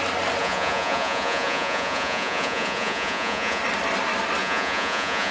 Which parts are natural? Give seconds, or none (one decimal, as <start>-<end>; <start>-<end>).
0.0-0.4; 3.6-4.4